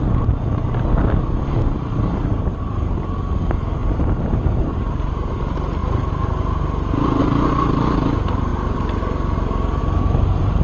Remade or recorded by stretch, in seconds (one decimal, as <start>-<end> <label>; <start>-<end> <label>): 0.0-3.8 recorded; 3.8-5.3 remade; 5.3-10.6 recorded

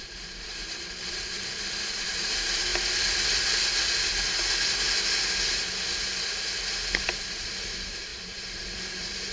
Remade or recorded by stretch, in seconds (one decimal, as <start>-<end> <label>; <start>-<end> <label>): 0.0-2.7 remade; 2.7-7.0 recorded; 7.0-9.3 remade